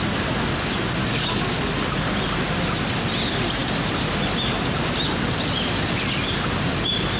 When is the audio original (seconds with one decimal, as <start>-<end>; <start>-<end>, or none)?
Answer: 0.0-1.0; 1.6-7.2